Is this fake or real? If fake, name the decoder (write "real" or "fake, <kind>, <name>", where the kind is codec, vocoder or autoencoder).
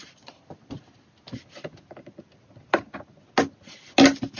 real